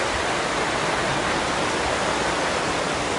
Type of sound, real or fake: real